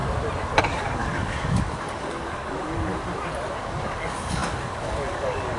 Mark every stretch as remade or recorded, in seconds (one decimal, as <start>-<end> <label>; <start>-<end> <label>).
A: 0.0-0.6 recorded; 0.6-2.9 remade; 2.9-3.5 recorded; 3.5-5.6 remade